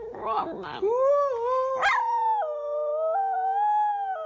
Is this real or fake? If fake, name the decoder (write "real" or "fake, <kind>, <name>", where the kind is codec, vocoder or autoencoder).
real